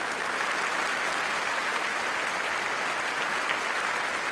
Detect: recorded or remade recorded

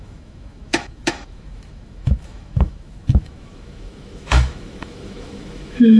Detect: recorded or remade remade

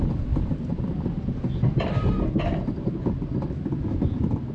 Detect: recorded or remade recorded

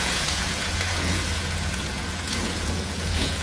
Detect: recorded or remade remade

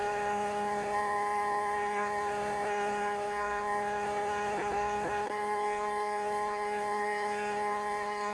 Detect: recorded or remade remade